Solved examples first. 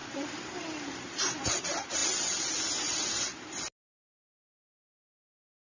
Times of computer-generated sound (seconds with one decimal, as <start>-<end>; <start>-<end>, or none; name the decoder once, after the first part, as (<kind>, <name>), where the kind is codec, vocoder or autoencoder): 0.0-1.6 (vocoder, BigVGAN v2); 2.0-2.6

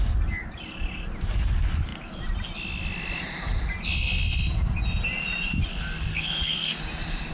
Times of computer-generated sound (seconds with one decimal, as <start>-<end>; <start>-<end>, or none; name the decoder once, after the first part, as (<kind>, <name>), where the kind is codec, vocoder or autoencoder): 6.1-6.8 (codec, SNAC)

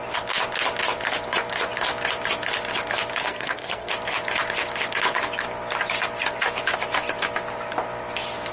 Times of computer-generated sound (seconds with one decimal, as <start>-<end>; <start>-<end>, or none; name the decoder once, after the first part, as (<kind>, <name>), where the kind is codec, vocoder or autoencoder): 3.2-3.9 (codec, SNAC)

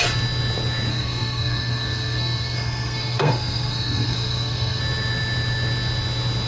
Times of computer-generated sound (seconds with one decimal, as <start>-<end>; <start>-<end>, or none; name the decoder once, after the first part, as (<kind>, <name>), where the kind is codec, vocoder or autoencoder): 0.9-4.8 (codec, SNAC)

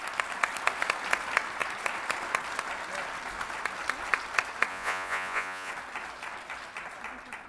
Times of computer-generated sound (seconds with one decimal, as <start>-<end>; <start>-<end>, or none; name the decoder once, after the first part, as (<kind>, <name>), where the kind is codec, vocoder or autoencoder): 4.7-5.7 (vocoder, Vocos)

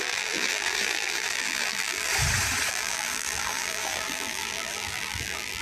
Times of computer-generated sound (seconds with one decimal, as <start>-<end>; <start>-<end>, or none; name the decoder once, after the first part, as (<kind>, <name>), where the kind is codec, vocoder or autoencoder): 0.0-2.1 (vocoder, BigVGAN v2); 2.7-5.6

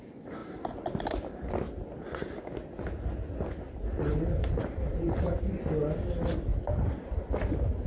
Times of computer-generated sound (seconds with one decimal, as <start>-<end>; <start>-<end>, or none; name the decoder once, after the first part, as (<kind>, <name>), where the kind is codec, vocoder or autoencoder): 4.1-5.4 (vocoder, BigVGAN v2); 6.5-7.2

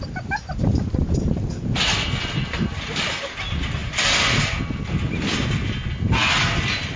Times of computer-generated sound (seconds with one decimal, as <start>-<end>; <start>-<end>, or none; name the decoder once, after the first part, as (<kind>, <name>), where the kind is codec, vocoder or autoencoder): none